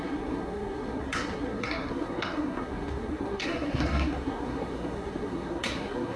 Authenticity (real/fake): fake